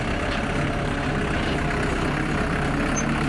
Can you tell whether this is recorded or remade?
recorded